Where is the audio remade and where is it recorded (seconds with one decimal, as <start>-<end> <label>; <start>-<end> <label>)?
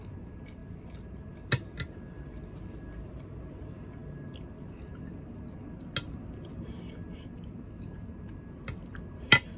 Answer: 0.0-9.6 recorded